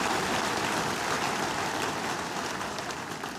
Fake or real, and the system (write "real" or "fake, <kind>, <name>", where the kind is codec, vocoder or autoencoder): real